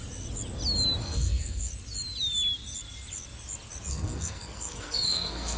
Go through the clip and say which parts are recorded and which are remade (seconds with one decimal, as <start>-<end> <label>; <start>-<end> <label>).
0.0-1.0 recorded; 1.0-1.7 remade; 1.7-3.9 recorded; 3.9-5.6 remade